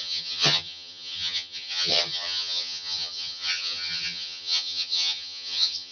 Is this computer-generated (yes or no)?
yes